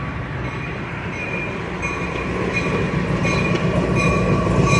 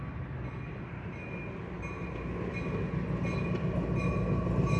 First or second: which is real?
second